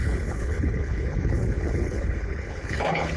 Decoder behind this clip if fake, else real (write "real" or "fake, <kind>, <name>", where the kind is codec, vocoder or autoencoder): fake, codec, HILCodec